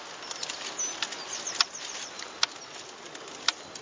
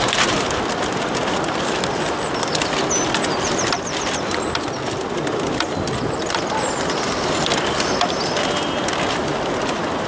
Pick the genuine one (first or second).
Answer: first